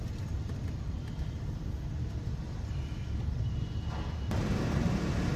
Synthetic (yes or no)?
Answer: no